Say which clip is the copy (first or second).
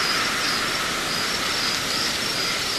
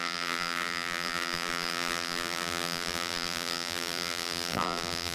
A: second